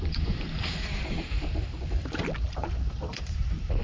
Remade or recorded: remade